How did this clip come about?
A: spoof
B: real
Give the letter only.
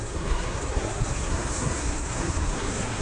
A